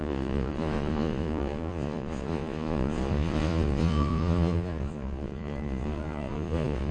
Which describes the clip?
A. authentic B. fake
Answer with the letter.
B